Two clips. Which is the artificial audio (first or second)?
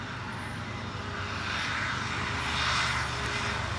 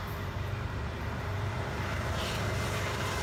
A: second